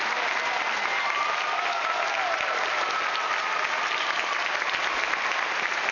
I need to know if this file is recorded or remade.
recorded